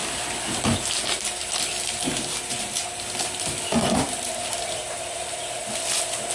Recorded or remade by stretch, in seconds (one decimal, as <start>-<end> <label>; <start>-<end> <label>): 0.0-6.3 recorded